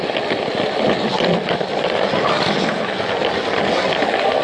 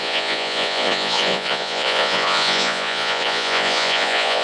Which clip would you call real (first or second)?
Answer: first